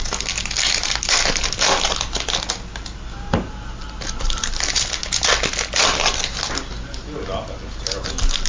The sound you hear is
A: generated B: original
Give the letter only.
B